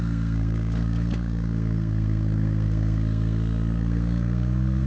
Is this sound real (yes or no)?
no